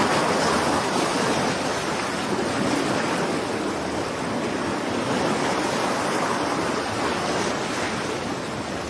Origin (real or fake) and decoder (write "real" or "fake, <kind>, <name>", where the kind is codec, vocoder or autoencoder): real